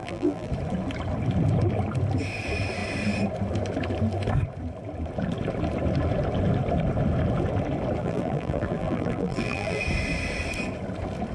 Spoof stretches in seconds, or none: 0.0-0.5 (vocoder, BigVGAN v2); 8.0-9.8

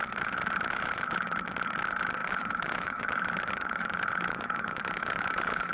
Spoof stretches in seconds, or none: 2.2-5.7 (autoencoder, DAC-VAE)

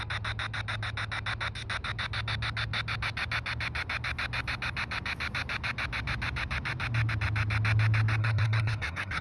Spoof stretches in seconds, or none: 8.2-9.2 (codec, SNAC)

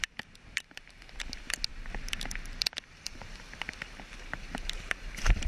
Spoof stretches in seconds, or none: none